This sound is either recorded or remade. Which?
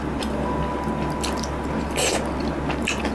recorded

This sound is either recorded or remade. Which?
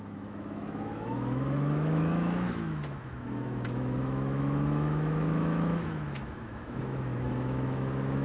remade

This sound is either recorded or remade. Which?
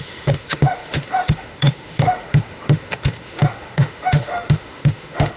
remade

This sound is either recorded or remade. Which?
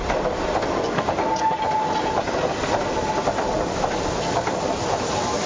recorded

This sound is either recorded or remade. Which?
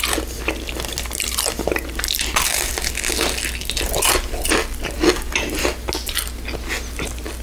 recorded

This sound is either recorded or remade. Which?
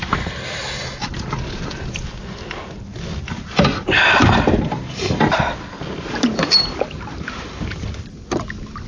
recorded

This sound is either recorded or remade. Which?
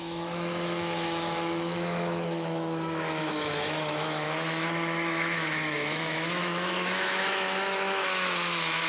remade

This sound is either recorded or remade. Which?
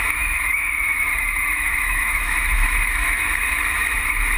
remade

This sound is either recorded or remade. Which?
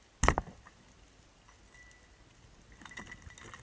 recorded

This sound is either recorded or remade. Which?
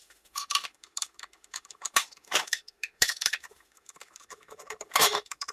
remade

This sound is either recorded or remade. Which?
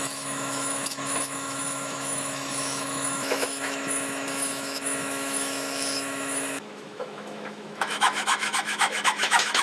remade